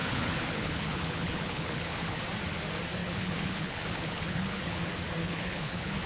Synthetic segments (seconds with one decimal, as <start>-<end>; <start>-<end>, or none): 0.0-2.2; 3.0-4.8; 5.2-6.1